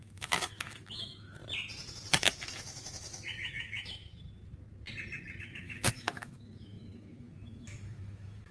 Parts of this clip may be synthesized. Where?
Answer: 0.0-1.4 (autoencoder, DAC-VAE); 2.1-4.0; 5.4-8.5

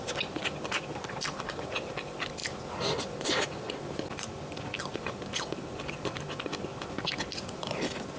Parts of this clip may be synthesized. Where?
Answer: none